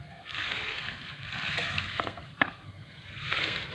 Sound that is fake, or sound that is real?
fake